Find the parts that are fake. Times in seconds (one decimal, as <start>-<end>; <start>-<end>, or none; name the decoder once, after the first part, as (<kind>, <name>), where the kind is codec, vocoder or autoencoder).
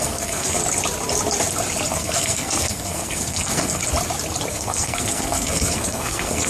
0.0-0.6 (codec, SNAC); 1.9-3.8; 4.5-6.5